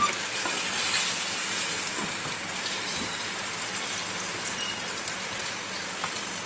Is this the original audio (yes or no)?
yes